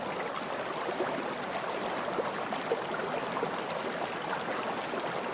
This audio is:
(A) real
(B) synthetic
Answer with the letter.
A